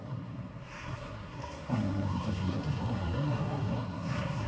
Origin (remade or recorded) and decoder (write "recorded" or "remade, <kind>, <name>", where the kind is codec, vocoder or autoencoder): remade, codec, SNAC